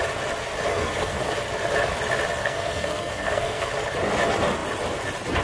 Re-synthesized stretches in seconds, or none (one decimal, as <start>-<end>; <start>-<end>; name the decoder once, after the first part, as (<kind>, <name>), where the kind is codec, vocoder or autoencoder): 0.7-1.3 (codec, SNAC); 2.4-3.7